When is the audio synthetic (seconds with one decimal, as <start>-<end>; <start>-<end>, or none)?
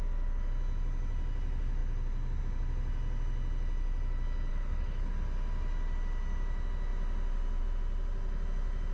4.5-5.1